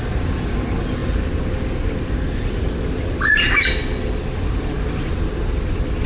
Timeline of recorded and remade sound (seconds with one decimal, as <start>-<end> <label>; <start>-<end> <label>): 0.0-6.1 recorded